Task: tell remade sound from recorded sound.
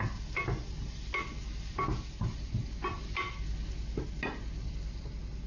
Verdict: recorded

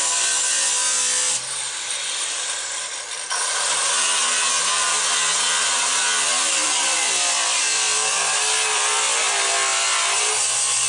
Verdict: remade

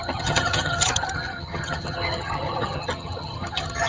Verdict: remade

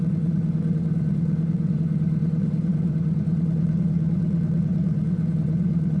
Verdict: remade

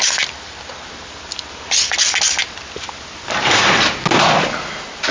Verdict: recorded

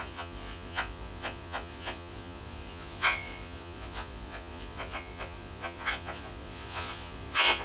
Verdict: remade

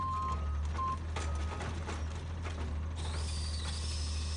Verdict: recorded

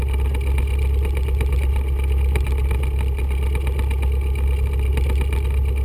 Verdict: recorded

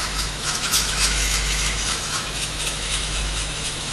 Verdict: remade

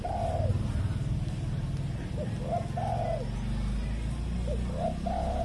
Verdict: recorded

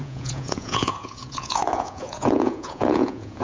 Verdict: remade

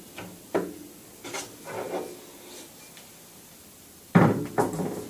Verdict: recorded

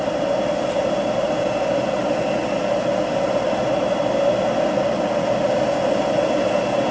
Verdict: recorded